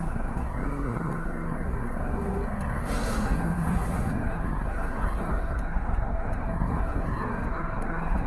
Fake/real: fake